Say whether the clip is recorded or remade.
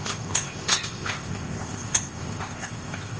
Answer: remade